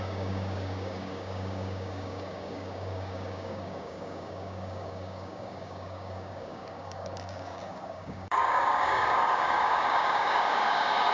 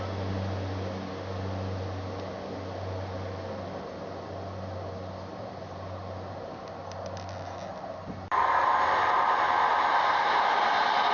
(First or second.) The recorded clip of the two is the second